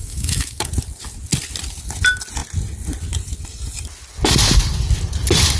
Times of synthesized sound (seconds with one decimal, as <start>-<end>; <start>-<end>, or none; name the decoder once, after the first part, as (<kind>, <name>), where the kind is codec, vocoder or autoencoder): 0.0-0.7 (autoencoder, DAC-VAE)